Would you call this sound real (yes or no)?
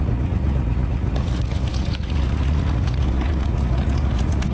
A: no